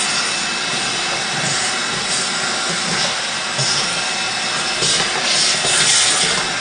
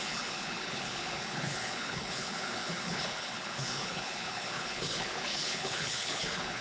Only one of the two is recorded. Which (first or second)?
first